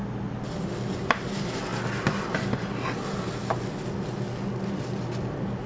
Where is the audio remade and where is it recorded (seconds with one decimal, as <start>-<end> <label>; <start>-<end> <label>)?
0.0-5.7 recorded